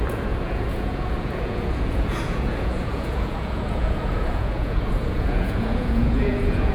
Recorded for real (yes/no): no